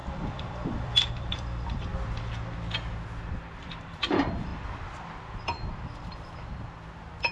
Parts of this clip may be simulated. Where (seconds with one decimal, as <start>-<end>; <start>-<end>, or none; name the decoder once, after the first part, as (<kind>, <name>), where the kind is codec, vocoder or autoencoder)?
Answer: 0.0-1.9 (vocoder, BigVGAN v2); 3.6-4.5